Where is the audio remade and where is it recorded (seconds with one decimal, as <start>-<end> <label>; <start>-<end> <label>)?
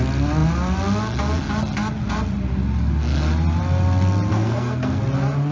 0.0-4.3 recorded; 4.3-5.0 remade; 5.0-5.5 recorded